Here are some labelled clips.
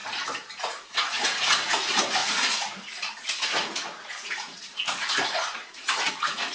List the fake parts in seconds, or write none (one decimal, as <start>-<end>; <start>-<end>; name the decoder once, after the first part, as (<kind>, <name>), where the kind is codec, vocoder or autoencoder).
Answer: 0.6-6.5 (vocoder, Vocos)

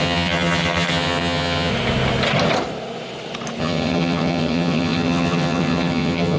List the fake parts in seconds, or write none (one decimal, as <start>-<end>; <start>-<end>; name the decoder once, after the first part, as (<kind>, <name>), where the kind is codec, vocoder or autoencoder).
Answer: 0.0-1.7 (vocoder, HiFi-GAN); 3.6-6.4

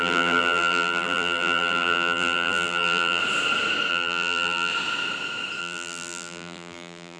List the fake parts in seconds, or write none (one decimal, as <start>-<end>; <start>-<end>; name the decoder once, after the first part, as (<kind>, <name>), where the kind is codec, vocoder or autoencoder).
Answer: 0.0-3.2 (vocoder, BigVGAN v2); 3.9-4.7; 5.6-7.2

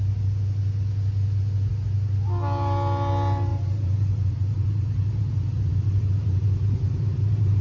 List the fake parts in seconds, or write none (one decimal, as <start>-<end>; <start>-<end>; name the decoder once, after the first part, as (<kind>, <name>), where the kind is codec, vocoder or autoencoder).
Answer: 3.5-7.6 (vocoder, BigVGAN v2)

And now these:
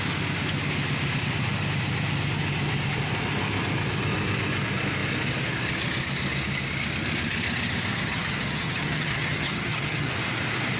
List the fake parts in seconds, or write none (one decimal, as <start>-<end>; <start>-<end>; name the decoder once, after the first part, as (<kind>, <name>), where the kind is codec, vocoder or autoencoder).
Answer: 7.9-10.1 (vocoder, HiFi-GAN)